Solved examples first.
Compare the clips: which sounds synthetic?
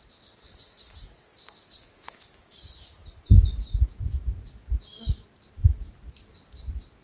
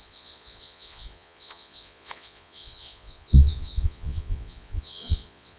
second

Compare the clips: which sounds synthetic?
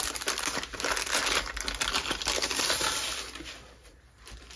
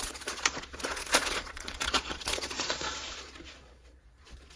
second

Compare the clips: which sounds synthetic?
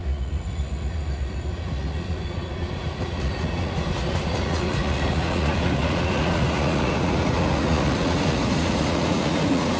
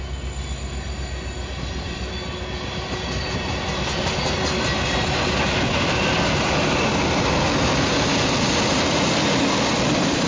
first